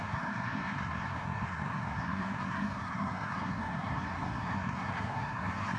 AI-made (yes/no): yes